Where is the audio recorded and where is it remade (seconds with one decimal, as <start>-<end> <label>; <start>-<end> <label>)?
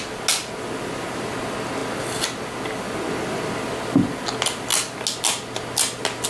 0.0-6.3 recorded